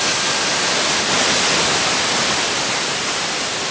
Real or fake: real